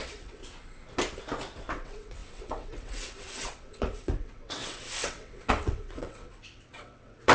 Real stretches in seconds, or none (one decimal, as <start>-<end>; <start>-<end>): 0.4-1.7